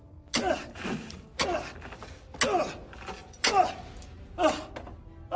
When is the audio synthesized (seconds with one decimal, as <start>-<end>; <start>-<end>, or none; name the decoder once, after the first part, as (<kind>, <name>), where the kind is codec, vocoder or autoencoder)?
3.2-3.7 (vocoder, Vocos)